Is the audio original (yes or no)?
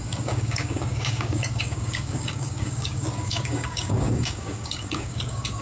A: no